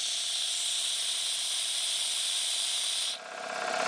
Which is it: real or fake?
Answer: real